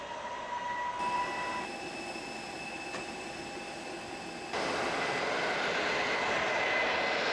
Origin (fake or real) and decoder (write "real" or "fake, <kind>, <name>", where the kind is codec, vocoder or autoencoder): real